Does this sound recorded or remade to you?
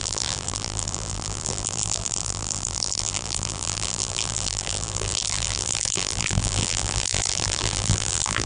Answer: remade